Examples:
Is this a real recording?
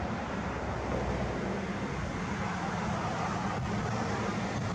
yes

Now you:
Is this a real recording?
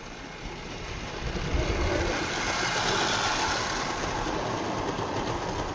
yes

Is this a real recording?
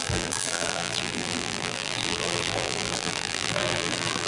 no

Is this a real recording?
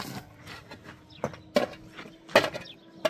yes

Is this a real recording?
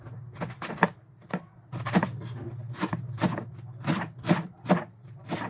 no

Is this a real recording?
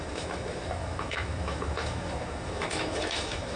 no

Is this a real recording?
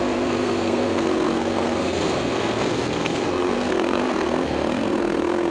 no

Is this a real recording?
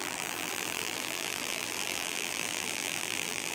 no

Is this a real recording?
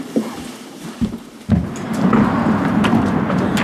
yes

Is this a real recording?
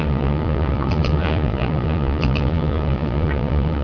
no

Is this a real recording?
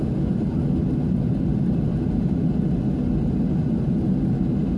yes